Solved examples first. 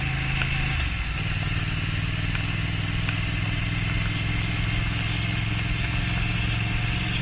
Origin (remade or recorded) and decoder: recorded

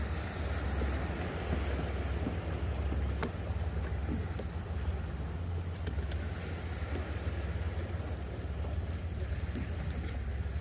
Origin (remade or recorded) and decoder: recorded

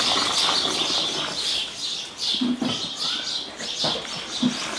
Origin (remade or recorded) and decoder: recorded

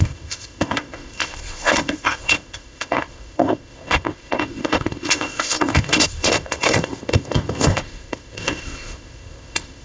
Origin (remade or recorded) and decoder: remade, codec, ZipCodec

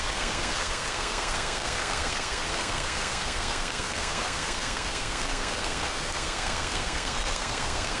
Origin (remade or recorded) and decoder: remade, codec, SNAC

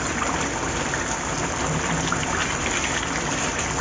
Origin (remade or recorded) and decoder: recorded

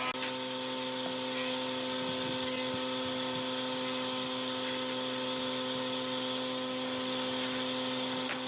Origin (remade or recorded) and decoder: recorded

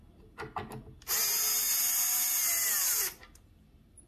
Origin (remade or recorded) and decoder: recorded